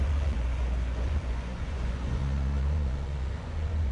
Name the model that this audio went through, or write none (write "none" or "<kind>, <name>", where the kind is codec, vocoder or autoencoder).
vocoder, Vocos